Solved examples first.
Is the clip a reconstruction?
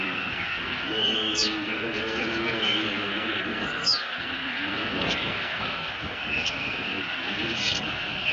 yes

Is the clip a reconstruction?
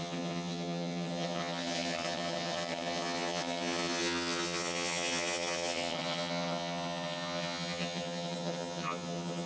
yes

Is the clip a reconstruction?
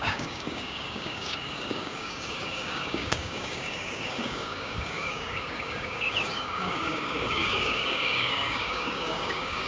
yes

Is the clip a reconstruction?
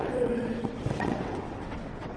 yes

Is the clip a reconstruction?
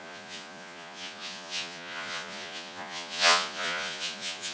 yes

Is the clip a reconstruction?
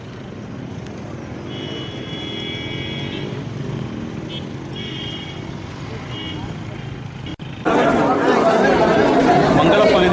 no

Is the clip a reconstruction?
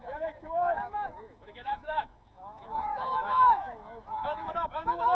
yes